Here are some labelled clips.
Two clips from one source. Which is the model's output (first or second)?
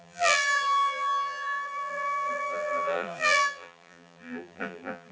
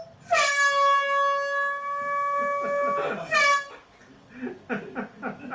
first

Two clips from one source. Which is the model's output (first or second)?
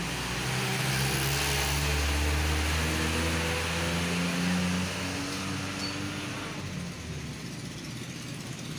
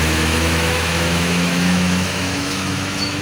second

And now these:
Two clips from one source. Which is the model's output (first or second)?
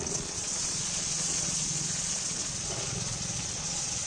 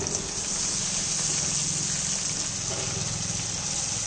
first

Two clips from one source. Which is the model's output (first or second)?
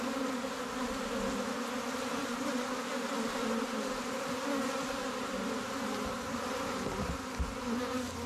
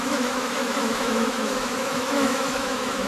second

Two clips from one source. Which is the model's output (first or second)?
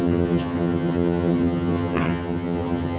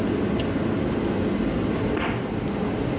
first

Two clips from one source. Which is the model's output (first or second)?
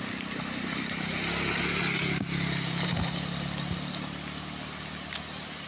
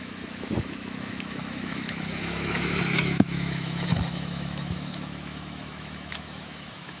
second